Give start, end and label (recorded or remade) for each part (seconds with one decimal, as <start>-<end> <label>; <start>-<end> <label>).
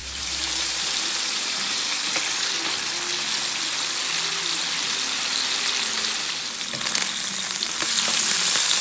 0.0-2.1 remade; 2.1-8.8 recorded